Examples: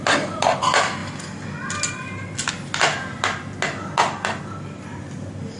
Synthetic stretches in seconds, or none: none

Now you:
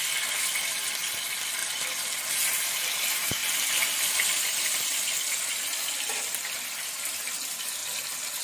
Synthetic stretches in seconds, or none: none

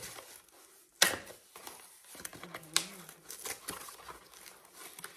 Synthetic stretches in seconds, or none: none

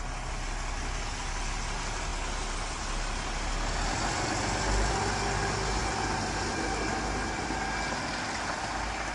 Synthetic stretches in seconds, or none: none

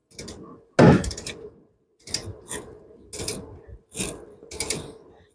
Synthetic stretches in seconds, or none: none